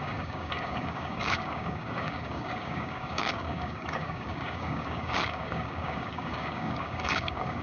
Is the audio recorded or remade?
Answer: remade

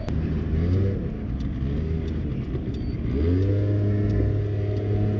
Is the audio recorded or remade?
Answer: recorded